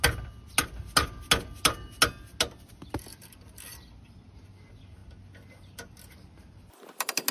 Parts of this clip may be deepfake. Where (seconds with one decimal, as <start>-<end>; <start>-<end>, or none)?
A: none